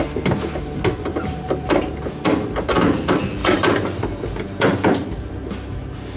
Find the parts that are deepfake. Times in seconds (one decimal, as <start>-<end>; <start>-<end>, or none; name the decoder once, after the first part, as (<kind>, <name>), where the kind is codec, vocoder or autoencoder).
1.1-2.0 (vocoder, BigVGAN v2); 3.4-5.5